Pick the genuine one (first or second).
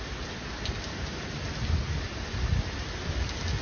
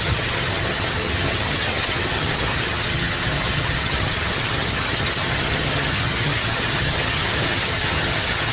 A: first